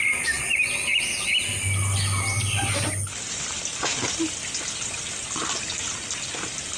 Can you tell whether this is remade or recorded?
recorded